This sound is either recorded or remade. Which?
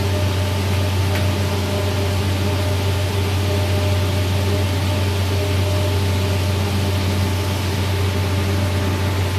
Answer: recorded